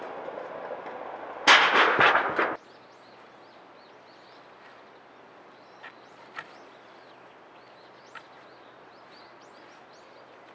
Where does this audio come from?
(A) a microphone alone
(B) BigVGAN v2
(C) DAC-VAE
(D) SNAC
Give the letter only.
A